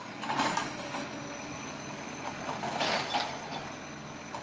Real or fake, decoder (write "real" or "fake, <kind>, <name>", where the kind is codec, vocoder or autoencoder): real